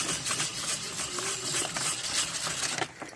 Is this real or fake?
real